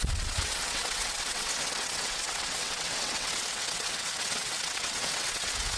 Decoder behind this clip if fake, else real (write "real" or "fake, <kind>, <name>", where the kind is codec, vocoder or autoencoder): fake, vocoder, WaveNeXt